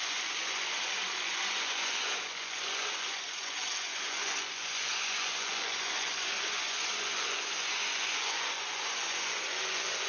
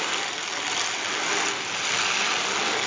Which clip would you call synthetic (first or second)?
first